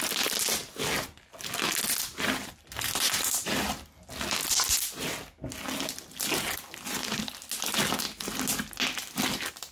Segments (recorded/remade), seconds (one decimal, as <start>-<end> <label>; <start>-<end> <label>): 0.0-9.7 recorded